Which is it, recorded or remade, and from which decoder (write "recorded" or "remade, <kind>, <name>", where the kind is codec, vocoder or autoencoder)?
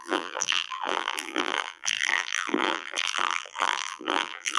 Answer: remade, vocoder, BigVGAN v2